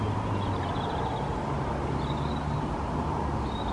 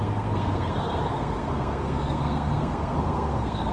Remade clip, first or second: second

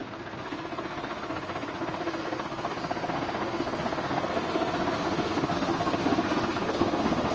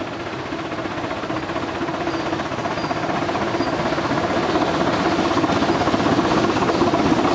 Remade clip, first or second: first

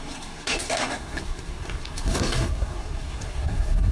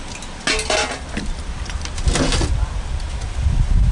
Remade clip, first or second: first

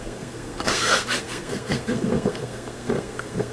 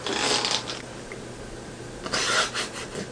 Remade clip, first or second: first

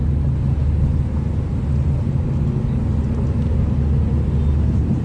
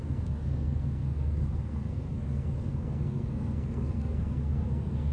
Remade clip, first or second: second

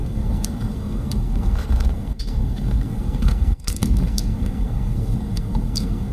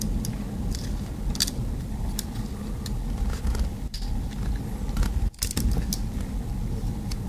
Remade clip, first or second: first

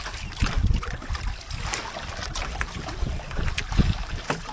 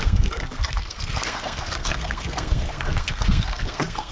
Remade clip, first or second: second